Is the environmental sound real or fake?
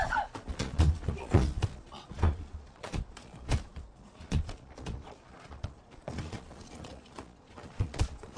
fake